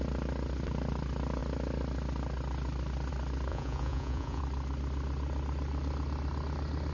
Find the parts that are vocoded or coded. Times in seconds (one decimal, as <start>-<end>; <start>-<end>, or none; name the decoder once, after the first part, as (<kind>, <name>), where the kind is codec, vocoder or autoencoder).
3.5-4.4 (vocoder, Vocos)